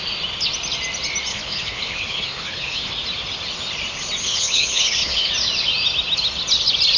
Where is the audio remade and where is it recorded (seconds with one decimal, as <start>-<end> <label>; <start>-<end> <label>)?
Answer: 0.0-1.3 recorded; 1.3-2.9 remade; 2.9-4.2 recorded; 4.2-5.3 remade; 5.3-7.0 recorded